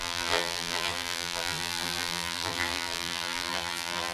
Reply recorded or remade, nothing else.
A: remade